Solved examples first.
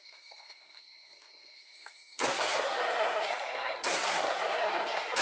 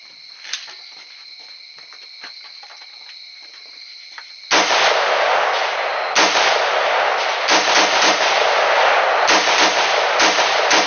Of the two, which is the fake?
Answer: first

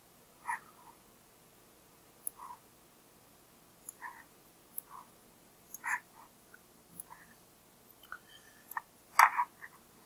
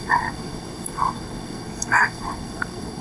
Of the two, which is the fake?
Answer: second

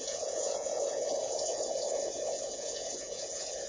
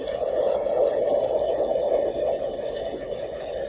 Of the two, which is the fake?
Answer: first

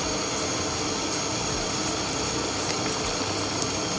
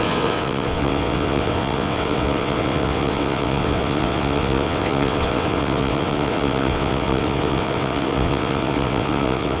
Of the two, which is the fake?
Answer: second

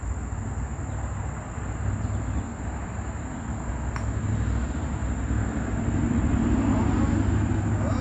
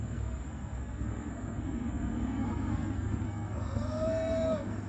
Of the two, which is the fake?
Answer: second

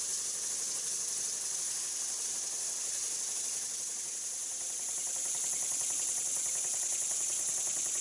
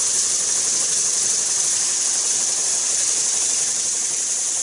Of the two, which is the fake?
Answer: second